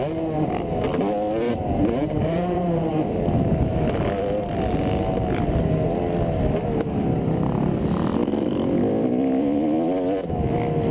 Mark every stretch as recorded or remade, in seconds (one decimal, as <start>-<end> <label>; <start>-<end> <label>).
0.0-2.0 recorded; 2.0-2.9 remade; 2.9-10.9 recorded